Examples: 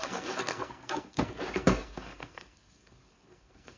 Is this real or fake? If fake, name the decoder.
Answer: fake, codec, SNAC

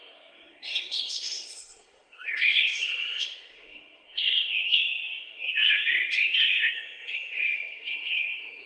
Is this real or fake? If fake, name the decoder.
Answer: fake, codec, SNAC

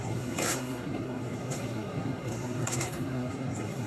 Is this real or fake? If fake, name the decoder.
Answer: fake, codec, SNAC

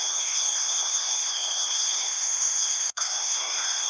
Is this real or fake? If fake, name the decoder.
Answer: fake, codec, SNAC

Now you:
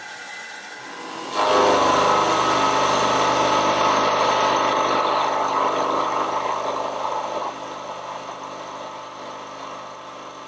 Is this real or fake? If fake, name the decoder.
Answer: real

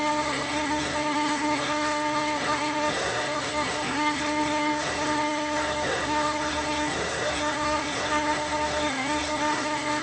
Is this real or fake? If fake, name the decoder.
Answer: fake, codec, SNAC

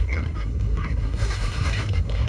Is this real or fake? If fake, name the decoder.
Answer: fake, codec, SNAC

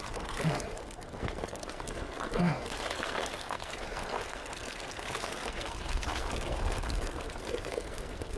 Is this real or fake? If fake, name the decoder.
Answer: fake, codec, SNAC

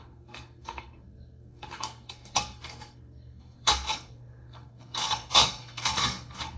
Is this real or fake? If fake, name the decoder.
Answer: fake, codec, SNAC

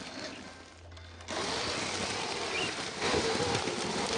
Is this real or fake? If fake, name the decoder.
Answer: real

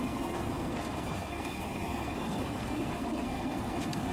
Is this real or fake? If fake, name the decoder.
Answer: fake, codec, SNAC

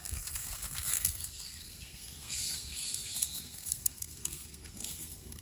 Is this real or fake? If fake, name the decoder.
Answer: fake, codec, SNAC